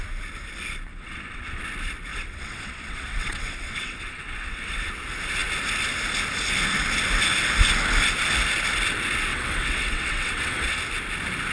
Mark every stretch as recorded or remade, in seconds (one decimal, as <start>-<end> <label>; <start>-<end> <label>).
0.0-0.9 recorded; 0.9-1.6 remade; 1.6-2.1 recorded; 2.1-4.9 remade; 4.9-9.3 recorded; 9.3-10.8 remade; 10.8-11.5 recorded